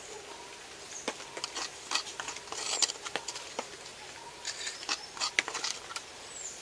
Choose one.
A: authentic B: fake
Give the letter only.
A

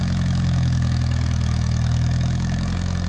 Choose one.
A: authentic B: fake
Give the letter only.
B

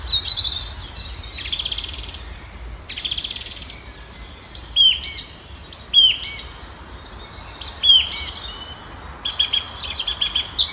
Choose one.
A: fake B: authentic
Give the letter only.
B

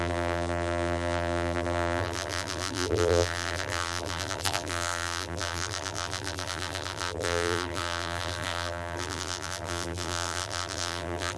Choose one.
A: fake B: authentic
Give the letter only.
A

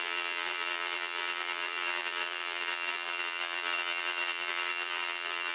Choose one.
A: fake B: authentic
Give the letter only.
A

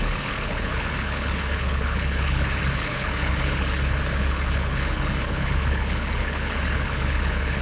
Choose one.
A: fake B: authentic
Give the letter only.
A